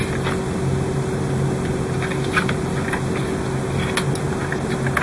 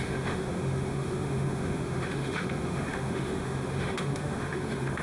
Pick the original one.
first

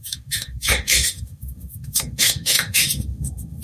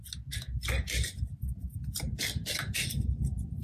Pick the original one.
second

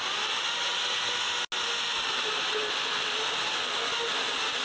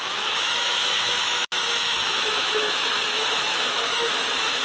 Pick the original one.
first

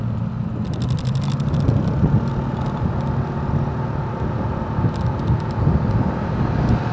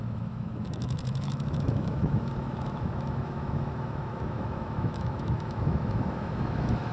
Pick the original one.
first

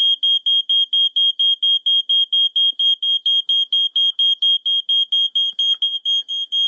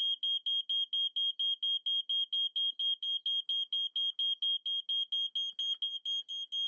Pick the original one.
second